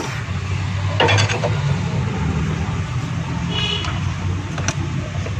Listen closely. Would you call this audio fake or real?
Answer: real